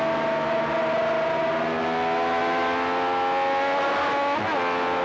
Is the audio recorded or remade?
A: recorded